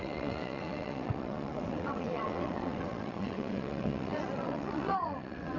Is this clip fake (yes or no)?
yes